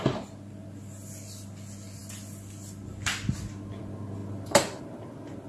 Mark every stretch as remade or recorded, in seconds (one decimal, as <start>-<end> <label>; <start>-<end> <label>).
0.0-5.5 recorded